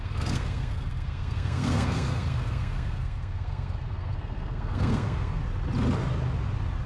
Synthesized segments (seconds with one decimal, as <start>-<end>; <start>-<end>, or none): 0.0-5.4